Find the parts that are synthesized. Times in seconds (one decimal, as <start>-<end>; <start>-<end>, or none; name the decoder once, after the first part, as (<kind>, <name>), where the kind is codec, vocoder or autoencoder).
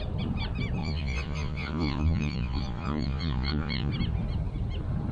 0.8-3.9 (vocoder, Vocos)